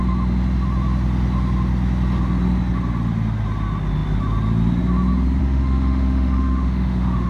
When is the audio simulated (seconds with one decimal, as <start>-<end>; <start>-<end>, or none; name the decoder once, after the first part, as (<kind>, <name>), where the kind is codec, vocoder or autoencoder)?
5.4-7.3 (autoencoder, DAC-VAE)